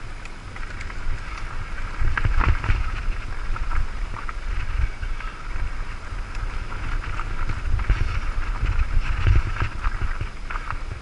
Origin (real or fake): real